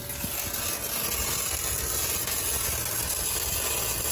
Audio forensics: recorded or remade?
recorded